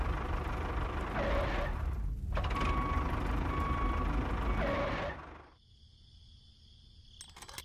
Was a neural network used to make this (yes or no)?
no